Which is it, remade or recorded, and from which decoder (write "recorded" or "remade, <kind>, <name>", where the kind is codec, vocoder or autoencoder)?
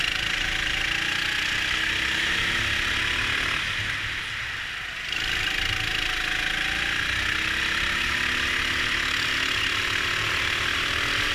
recorded